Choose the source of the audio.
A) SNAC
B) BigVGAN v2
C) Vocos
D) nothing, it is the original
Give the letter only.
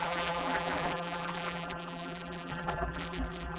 B